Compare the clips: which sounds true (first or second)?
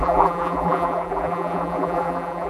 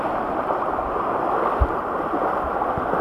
second